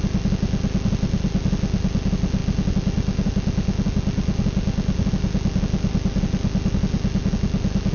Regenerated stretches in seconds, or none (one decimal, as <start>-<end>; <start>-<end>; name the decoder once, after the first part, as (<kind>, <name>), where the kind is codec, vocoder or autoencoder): none